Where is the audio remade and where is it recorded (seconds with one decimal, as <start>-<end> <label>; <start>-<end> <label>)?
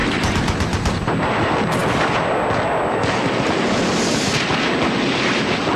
0.0-5.8 recorded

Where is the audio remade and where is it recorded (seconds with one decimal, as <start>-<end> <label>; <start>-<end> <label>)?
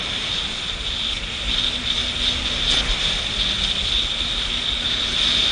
0.0-5.5 recorded